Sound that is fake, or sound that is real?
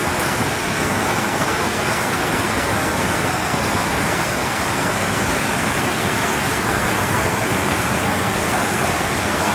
fake